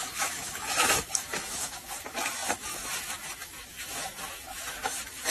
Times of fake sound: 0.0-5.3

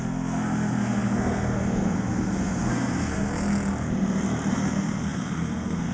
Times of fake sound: 0.0-3.3; 4.5-5.9

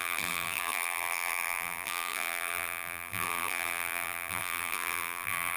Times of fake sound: 0.0-5.6